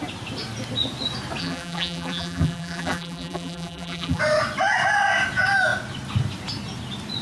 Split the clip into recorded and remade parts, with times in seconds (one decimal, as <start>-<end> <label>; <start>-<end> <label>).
0.0-1.4 recorded; 1.4-4.2 remade; 4.2-7.2 recorded